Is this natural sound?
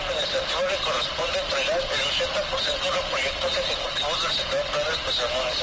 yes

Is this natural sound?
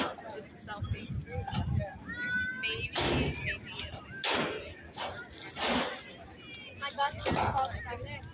yes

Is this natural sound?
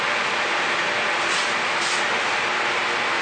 yes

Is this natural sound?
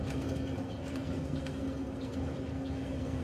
no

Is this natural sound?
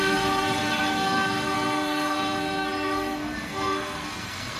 no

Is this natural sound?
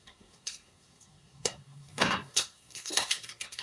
no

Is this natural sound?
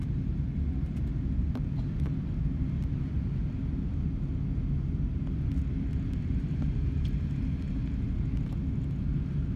yes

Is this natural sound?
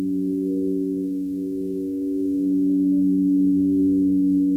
no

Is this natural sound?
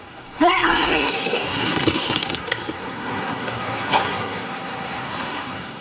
no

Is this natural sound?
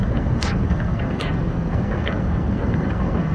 no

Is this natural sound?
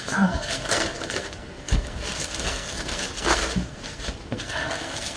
no